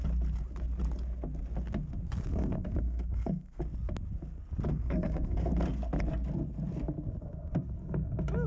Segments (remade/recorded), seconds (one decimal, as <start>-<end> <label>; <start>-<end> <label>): 0.0-2.3 recorded; 2.3-3.6 remade; 3.6-4.7 recorded; 4.7-5.5 remade; 5.5-8.5 recorded